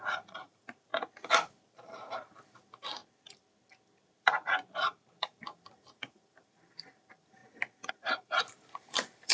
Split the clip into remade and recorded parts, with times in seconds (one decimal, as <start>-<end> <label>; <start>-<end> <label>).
0.0-0.9 remade; 0.9-1.5 recorded; 1.5-3.0 remade; 3.0-5.2 recorded; 5.2-7.4 remade; 7.4-7.9 recorded; 7.9-9.3 remade